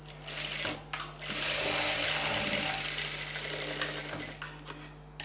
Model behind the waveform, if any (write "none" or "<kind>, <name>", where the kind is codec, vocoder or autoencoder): none